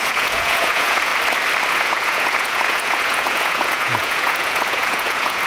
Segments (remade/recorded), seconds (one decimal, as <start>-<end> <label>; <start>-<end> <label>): 0.0-1.1 remade; 1.1-1.7 recorded; 1.7-5.5 remade